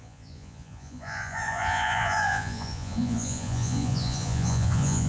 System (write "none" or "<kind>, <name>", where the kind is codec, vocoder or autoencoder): vocoder, Vocos